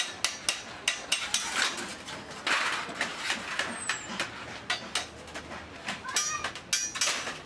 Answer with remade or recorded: recorded